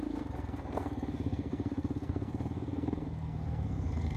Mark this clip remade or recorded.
remade